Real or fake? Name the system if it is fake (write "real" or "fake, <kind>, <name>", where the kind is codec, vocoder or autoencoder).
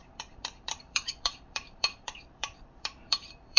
fake, vocoder, BigVGAN v2